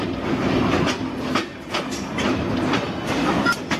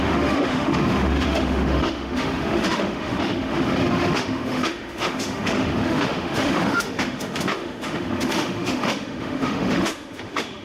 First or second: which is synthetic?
second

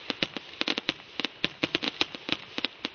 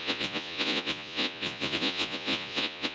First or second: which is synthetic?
second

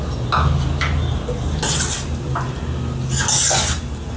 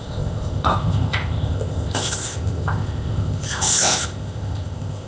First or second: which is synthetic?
second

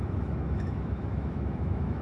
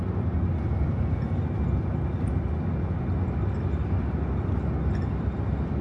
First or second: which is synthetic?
first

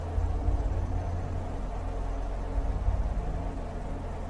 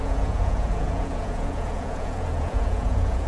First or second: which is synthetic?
second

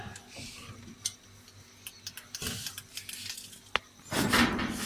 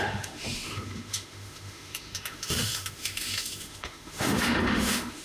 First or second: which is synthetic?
second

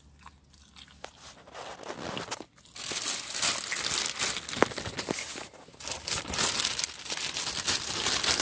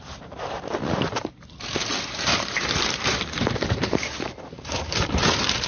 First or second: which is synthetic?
second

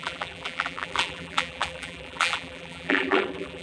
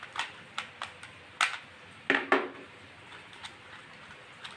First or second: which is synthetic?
first